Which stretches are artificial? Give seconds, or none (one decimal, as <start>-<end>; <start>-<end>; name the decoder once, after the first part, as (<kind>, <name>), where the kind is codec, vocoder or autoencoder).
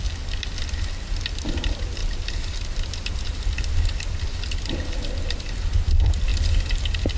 none